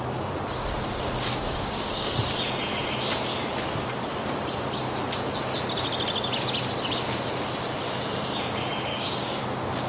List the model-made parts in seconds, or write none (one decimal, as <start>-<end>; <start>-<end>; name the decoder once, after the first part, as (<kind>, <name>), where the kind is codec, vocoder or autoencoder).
1.3-2.2 (codec, DAC); 8.9-9.4